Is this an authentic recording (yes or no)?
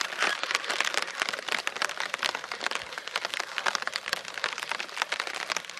yes